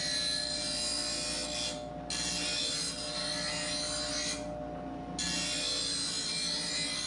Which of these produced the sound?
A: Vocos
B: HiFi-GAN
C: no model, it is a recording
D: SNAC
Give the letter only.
C